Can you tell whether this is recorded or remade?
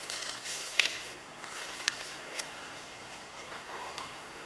remade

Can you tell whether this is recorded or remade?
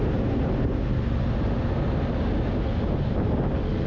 recorded